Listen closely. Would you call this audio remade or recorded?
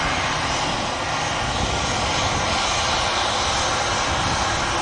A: recorded